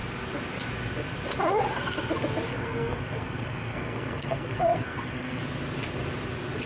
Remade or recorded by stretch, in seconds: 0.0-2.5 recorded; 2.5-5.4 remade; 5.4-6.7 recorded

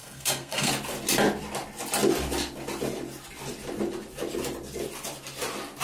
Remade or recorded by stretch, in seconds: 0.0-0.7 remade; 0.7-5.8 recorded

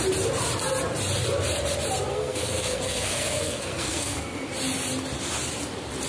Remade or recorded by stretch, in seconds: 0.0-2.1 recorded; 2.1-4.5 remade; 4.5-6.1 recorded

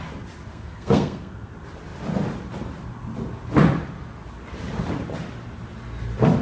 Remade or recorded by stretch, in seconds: 0.0-0.5 recorded; 0.5-1.5 remade; 1.5-6.4 recorded

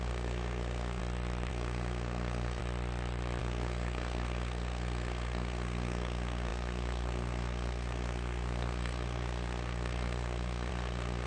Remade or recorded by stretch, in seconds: 0.0-1.0 remade; 1.0-1.5 recorded; 1.5-2.6 remade; 2.6-3.4 recorded; 3.4-11.3 remade

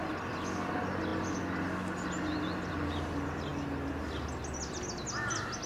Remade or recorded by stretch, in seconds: 0.0-5.7 recorded